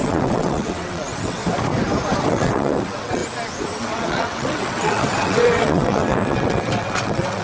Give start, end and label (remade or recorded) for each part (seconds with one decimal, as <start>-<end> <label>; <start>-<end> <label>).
0.0-1.4 remade; 1.4-2.2 recorded; 2.2-3.2 remade; 3.2-3.8 recorded; 3.8-7.4 remade